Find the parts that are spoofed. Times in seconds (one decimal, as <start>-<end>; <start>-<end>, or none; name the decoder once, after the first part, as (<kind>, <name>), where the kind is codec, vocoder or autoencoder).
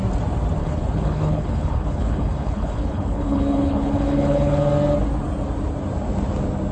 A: 0.6-4.6 (codec, HILCodec)